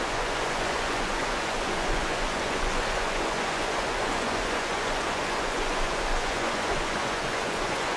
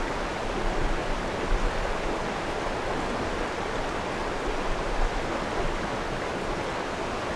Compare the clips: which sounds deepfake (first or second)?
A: first